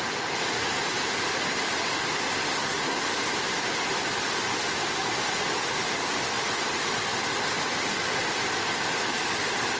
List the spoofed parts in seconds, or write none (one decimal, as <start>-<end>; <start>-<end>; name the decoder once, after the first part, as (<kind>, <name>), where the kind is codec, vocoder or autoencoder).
2.5-3.0 (codec, SNAC)